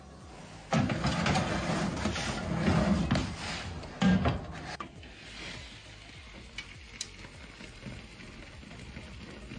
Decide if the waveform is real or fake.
real